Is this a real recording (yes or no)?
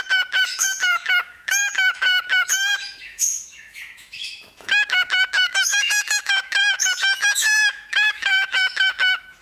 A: no